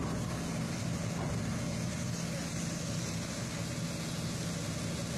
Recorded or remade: recorded